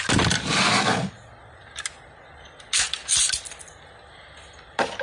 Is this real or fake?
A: real